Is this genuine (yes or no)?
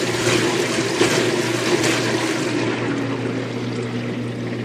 yes